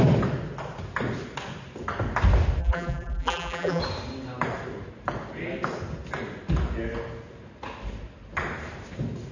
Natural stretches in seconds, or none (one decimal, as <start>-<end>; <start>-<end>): 0.0-2.6; 3.8-9.3